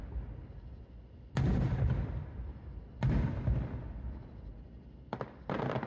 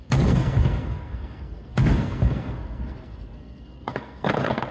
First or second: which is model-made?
second